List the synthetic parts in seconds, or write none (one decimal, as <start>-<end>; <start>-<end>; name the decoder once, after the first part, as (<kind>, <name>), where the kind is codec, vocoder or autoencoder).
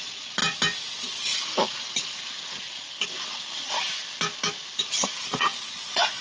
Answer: 0.0-0.4 (vocoder, Vocos); 0.9-1.3; 4.8-6.2